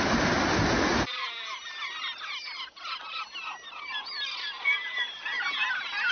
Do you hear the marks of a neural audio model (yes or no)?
no